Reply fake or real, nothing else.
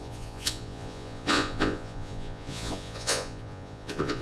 fake